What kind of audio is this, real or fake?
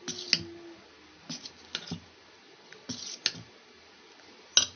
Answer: real